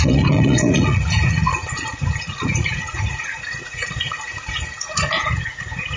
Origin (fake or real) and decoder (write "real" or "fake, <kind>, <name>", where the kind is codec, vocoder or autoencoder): fake, vocoder, Vocos